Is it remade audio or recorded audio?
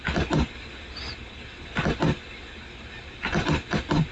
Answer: recorded